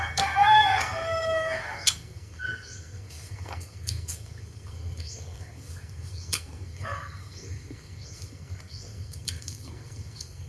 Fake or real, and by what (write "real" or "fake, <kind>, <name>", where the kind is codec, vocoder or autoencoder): fake, codec, SNAC